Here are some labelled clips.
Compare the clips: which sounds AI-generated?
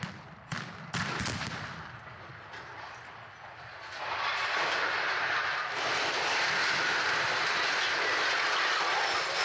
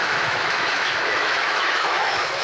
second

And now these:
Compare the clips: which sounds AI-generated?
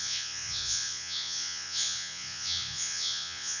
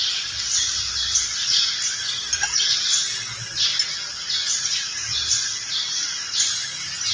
first